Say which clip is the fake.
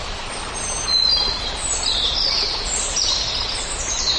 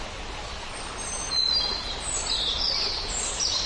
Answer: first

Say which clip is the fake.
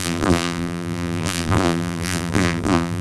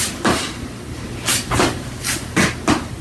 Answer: first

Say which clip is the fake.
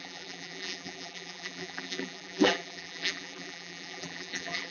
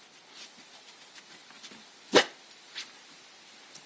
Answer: first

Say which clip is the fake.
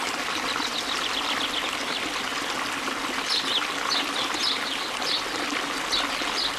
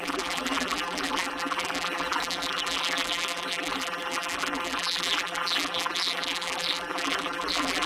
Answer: second